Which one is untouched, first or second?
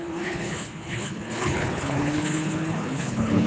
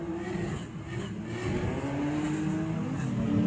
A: second